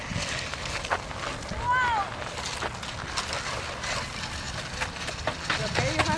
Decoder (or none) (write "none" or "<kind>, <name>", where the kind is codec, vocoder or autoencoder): none